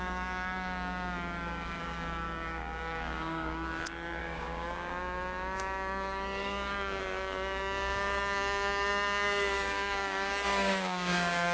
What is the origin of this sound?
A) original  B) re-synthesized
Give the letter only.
B